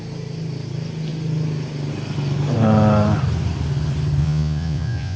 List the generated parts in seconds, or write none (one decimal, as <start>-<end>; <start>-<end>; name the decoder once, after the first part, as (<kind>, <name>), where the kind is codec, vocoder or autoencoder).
4.2-5.2 (vocoder, Vocos)